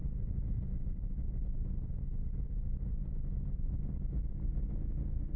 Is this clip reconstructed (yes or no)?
no